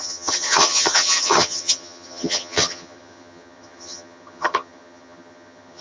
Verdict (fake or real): fake